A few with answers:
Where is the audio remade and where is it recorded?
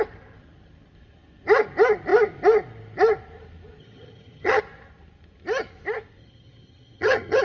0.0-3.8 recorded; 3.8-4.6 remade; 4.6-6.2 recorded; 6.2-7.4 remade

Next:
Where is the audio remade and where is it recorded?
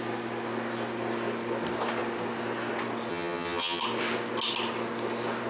0.0-3.1 recorded; 3.1-3.8 remade; 3.8-5.5 recorded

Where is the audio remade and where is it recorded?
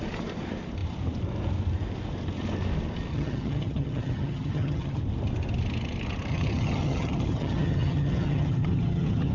0.0-3.1 recorded; 3.1-5.0 remade; 5.0-6.3 recorded; 6.3-9.3 remade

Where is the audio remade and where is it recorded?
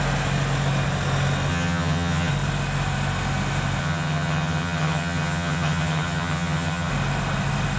0.0-1.5 recorded; 1.5-2.3 remade; 2.3-3.8 recorded; 3.8-6.9 remade; 6.9-7.8 recorded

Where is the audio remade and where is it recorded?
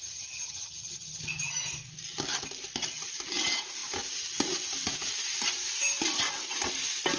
0.0-1.2 remade; 1.2-7.2 recorded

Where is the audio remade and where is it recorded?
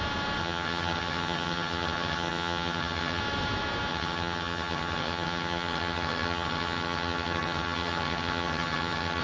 0.0-0.4 recorded; 0.4-3.2 remade; 3.2-3.9 recorded; 3.9-9.2 remade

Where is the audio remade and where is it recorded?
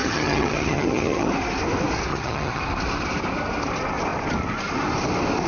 0.0-1.3 remade; 1.3-2.1 recorded; 2.1-2.6 remade; 2.6-5.5 recorded